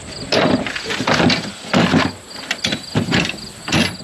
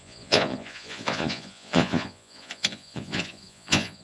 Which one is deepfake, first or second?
second